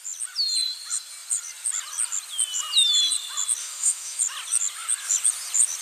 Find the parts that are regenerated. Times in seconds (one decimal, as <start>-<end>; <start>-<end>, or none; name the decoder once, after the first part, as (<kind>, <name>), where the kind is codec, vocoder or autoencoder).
3.6-4.2 (autoencoder, DAC-VAE)